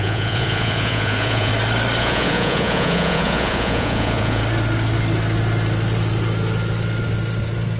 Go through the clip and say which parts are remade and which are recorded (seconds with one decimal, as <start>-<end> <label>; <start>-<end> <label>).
0.0-1.5 remade; 1.5-2.0 recorded; 2.0-4.4 remade; 4.4-7.8 recorded